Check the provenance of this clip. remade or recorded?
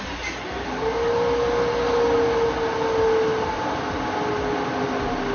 recorded